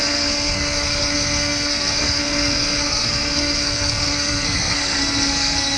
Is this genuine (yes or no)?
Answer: no